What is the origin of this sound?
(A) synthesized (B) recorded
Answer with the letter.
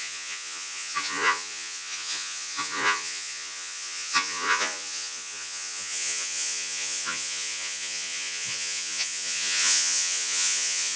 A